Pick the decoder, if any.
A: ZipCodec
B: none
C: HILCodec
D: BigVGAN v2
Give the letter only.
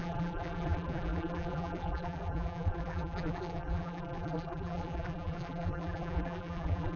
D